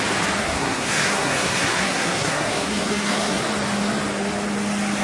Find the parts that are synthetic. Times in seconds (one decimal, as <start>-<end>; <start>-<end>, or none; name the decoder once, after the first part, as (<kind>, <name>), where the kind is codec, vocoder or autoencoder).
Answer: 0.4-3.4 (codec, SNAC)